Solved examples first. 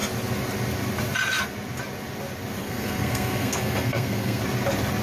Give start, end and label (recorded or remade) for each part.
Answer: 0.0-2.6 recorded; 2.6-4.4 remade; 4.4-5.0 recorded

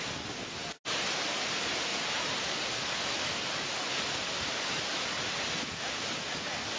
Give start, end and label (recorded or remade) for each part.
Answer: 0.0-6.8 recorded

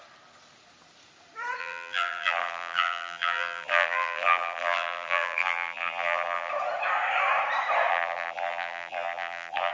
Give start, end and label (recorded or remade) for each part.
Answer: 0.0-1.6 recorded; 1.6-6.5 remade; 6.5-7.9 recorded; 7.9-9.7 remade

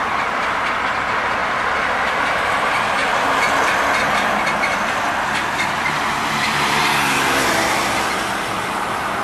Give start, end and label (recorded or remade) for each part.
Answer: 0.0-6.8 remade; 6.8-7.5 recorded; 7.5-9.2 remade

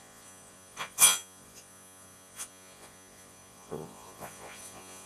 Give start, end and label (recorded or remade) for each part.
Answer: 0.0-5.1 remade

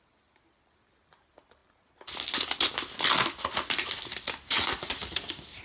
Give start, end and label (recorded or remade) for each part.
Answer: 0.0-1.6 remade; 1.6-4.5 recorded; 4.5-5.6 remade